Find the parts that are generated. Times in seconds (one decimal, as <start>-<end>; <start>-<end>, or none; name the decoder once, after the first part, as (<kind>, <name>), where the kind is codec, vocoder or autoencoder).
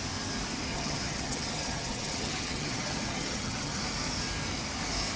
0.7-3.8 (vocoder, HiFi-GAN)